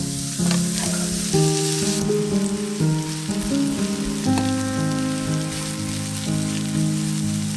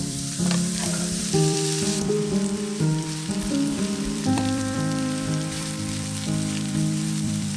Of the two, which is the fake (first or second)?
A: second